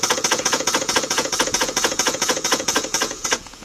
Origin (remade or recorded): remade